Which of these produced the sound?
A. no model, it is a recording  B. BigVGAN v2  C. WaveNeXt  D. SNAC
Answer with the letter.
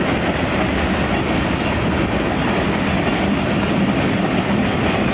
A